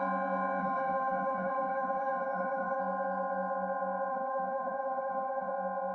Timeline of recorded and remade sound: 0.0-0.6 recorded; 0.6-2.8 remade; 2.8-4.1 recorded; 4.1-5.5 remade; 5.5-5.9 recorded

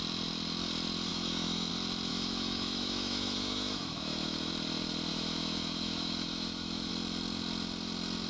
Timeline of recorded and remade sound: 0.0-1.1 recorded; 1.1-1.7 remade; 1.7-2.1 recorded; 2.1-4.5 remade; 4.5-5.1 recorded; 5.1-6.9 remade; 6.9-8.3 recorded

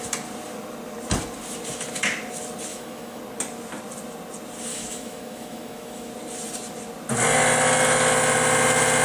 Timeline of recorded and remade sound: 0.0-2.7 recorded; 2.7-3.2 remade; 3.2-4.7 recorded; 4.7-6.1 remade; 6.1-9.0 recorded